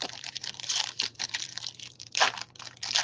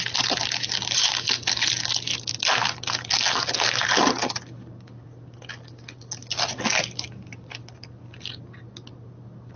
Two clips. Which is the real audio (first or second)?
second